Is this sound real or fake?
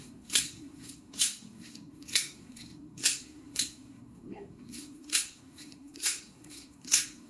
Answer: fake